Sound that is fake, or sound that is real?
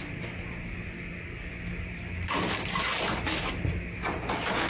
real